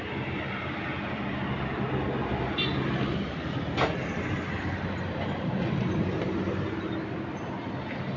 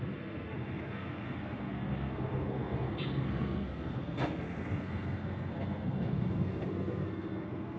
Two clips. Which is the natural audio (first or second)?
first